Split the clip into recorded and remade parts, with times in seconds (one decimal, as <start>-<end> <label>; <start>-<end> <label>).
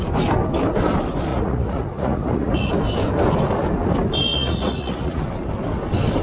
0.0-1.3 recorded; 1.3-2.7 remade; 2.7-4.3 recorded; 4.3-5.2 remade; 5.2-6.2 recorded